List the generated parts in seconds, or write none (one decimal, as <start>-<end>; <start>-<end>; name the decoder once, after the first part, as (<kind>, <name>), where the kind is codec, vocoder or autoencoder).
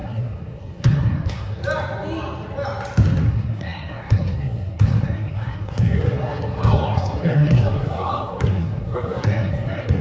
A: 0.0-1.6 (codec, SNAC); 3.3-10.0